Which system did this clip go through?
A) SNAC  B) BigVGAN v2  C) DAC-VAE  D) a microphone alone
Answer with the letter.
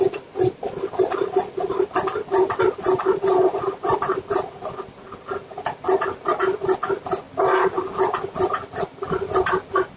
D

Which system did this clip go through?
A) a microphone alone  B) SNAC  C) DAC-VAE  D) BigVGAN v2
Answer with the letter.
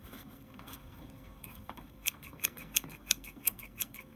B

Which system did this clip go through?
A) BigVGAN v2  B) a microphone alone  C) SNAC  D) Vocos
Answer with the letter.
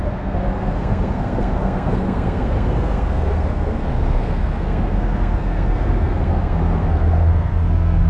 C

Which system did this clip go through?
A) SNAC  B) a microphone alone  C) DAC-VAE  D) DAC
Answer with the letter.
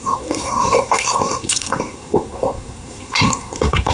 A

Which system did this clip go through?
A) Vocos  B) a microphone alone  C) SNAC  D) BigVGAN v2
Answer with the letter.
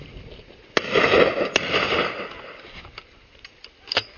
B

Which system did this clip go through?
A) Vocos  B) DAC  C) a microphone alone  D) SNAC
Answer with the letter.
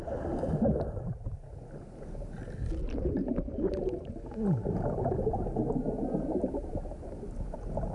C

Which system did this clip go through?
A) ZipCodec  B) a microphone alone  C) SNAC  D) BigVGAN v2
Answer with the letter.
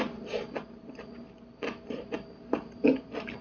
B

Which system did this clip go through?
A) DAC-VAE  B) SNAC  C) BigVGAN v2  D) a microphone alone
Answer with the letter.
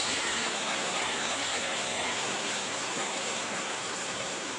B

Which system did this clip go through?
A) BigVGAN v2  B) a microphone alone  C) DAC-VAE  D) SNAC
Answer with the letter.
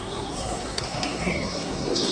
D